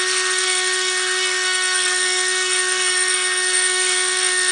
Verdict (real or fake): fake